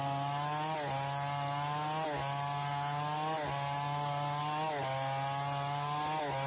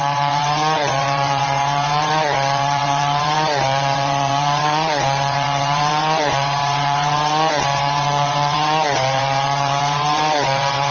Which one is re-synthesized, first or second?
second